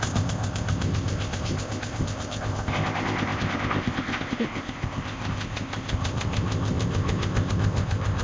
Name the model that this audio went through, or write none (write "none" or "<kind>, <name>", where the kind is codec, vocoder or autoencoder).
codec, ZipCodec